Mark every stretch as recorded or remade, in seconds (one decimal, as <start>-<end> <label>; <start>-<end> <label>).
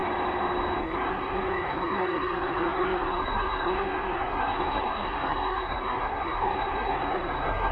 0.0-0.8 recorded; 0.8-7.7 remade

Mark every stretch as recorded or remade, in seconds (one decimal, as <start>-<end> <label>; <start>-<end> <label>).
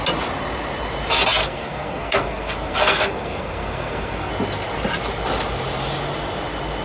0.0-1.4 recorded; 1.4-4.3 remade; 4.3-6.8 recorded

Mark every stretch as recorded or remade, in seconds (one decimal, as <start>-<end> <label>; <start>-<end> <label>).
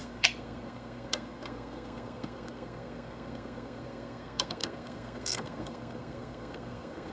0.0-7.1 remade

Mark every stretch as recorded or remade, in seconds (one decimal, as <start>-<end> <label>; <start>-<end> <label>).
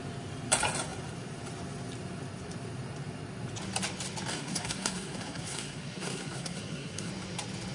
0.0-4.3 recorded; 4.3-7.1 remade; 7.1-7.7 recorded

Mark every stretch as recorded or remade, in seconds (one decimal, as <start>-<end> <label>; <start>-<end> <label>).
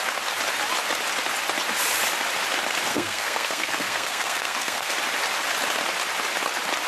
0.0-2.9 recorded; 2.9-4.9 remade; 4.9-6.9 recorded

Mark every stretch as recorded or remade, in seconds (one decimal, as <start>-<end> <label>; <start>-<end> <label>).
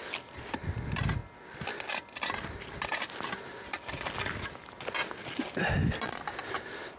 0.0-7.0 recorded